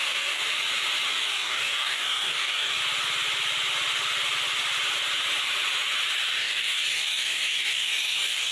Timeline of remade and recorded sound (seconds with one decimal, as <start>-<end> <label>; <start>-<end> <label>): 0.0-0.4 remade; 0.4-1.1 recorded; 1.1-2.8 remade; 2.8-6.3 recorded; 6.3-8.5 remade